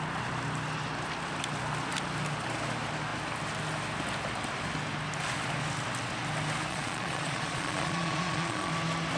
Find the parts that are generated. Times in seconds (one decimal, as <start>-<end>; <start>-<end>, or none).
6.7-8.7